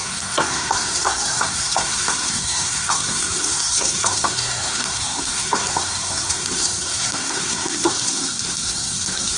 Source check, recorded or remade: remade